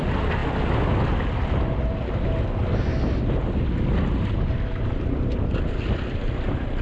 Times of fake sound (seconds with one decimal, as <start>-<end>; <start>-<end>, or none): none